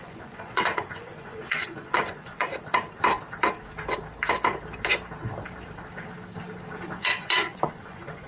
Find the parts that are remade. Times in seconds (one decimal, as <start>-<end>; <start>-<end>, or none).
0.0-2.5; 7.0-8.3